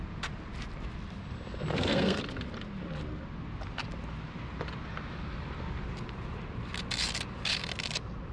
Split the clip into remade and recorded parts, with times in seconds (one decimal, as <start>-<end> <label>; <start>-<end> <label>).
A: 0.0-1.7 recorded; 1.7-2.2 remade; 2.2-8.3 recorded